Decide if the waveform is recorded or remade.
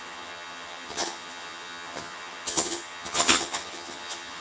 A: remade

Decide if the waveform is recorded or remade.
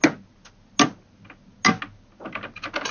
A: recorded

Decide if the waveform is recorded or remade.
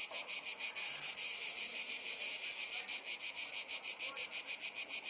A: recorded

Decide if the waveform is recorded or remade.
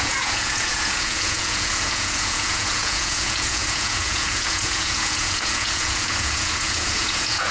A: remade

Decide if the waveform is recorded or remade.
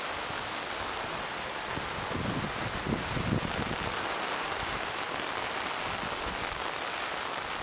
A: recorded